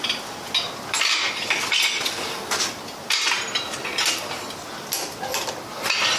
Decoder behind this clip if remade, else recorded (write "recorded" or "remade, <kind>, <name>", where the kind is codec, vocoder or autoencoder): recorded